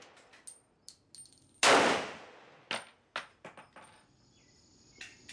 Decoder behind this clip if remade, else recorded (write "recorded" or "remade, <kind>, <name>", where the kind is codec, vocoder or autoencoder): recorded